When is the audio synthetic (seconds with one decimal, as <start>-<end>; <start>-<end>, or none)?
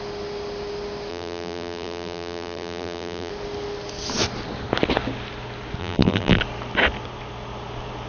1.1-3.3; 5.8-6.4